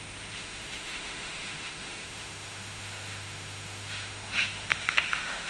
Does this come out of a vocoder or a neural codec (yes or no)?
yes